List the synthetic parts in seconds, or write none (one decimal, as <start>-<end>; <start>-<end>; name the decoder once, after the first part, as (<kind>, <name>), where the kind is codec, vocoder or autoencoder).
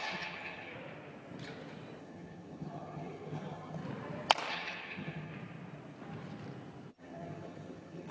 0.0-0.7 (vocoder, HiFi-GAN); 2.0-3.8; 4.5-5.3; 6.9-8.1